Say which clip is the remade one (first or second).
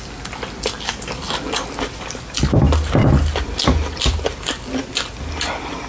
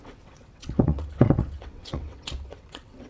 second